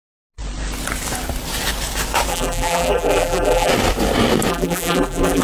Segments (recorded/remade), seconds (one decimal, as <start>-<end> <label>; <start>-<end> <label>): 0.0-2.3 recorded; 2.3-3.7 remade; 3.7-4.5 recorded; 4.5-5.4 remade

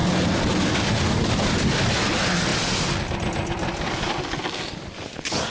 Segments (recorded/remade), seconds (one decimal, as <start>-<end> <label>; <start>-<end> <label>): 0.0-5.5 recorded